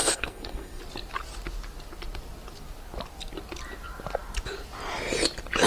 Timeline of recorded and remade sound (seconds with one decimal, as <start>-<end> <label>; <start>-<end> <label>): 0.0-0.8 remade; 0.8-5.7 recorded